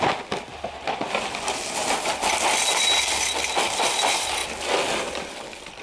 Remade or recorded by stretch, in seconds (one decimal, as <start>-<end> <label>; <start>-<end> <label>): 0.0-5.8 recorded